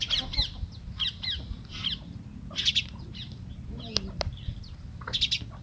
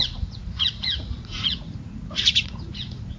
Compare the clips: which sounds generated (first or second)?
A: second